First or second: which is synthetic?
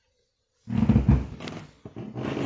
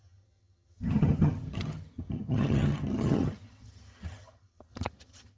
second